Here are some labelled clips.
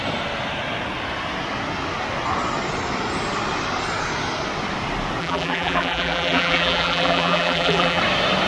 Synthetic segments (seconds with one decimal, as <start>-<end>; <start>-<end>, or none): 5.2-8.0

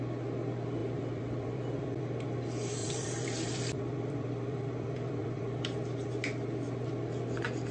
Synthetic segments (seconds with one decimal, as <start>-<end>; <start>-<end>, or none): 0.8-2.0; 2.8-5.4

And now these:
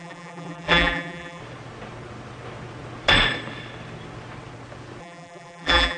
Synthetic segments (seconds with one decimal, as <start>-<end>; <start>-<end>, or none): 0.0-1.4; 5.0-6.0

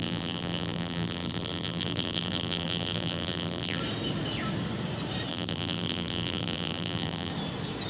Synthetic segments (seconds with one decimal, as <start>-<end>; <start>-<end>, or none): 0.0-3.8; 5.3-7.3

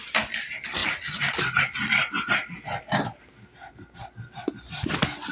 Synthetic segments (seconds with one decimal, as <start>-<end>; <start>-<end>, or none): 0.8-3.7